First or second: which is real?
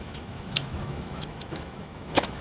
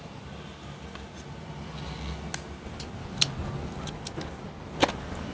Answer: second